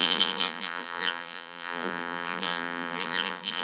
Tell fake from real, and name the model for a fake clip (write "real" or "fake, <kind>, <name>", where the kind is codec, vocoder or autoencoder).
fake, vocoder, BigVGAN v2